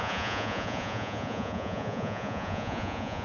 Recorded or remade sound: remade